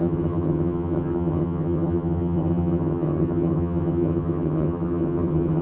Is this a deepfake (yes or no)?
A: yes